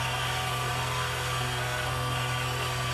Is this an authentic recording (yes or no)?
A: no